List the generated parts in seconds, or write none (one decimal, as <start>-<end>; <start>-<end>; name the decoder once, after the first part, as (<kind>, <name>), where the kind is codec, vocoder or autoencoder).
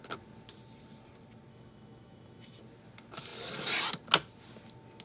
1.5-2.6 (autoencoder, DAC-VAE)